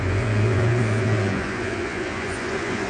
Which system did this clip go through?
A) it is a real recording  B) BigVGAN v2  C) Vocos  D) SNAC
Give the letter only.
C